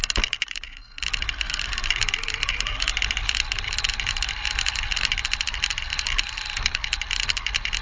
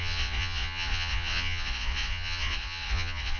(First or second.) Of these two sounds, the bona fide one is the first